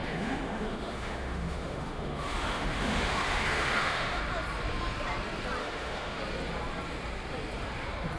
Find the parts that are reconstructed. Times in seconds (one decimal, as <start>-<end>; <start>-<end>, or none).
0.0-4.2; 5.6-6.2